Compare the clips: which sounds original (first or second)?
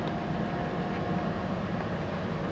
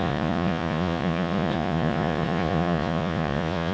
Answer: first